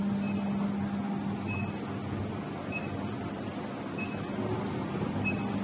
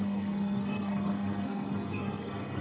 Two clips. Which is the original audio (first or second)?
first